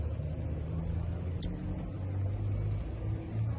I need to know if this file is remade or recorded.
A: recorded